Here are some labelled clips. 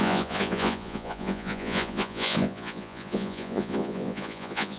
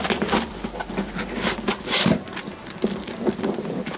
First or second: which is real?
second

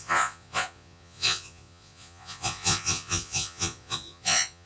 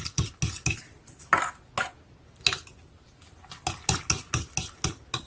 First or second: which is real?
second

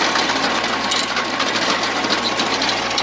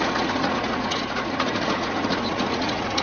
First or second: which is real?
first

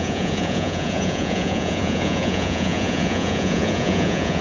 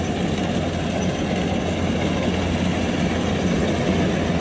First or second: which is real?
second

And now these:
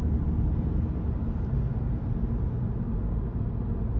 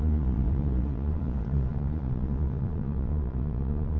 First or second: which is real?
first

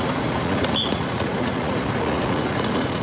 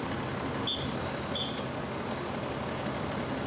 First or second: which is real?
second